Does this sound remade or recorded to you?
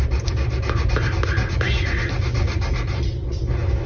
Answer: recorded